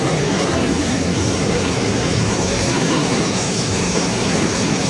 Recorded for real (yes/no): no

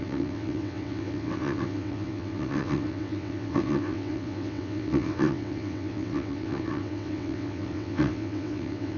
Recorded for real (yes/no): no